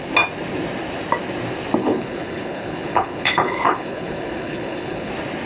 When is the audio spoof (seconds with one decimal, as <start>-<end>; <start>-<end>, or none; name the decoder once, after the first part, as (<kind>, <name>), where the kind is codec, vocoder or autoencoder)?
1.8-5.1 (codec, HILCodec)